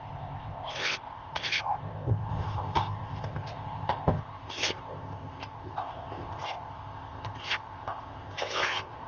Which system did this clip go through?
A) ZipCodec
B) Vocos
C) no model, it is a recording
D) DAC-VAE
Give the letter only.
A